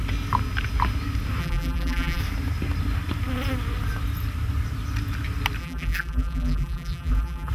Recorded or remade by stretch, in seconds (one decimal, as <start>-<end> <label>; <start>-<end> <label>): 0.0-1.4 recorded; 1.4-2.2 remade; 2.2-5.6 recorded; 5.6-7.5 remade